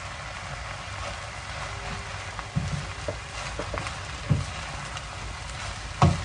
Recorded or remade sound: recorded